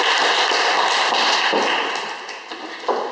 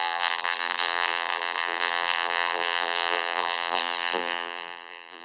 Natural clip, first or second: first